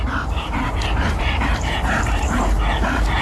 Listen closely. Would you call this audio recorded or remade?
remade